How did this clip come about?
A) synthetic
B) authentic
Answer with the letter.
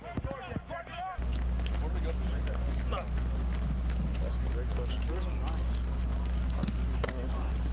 B